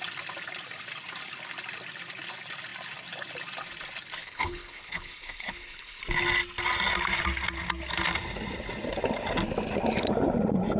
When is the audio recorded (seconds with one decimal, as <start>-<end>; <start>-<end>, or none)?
0.0-4.2; 6.0-10.8